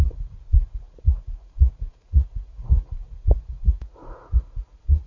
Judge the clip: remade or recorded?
remade